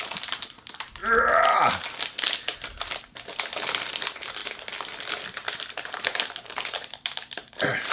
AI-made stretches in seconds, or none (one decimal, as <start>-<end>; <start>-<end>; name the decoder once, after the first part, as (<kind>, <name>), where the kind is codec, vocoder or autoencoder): 0.0-1.0 (vocoder, BigVGAN v2); 3.9-4.4; 5.6-7.9